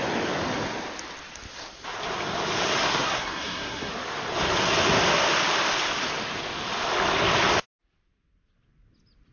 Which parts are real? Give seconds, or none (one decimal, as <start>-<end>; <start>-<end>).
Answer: 0.0-2.9; 3.9-9.3